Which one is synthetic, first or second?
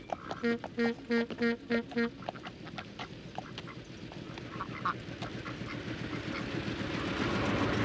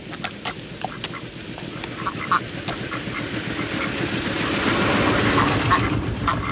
second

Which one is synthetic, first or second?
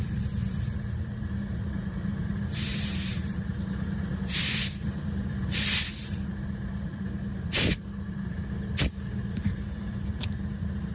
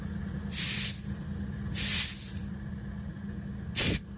first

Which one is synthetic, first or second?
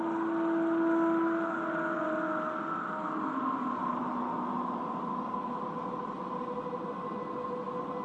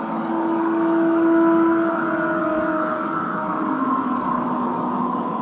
second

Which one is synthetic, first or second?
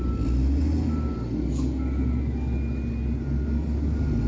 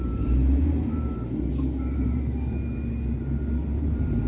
second